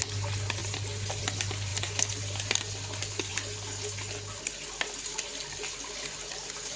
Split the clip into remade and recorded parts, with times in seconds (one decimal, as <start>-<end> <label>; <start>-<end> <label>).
0.0-1.7 recorded; 1.7-2.5 remade; 2.5-6.8 recorded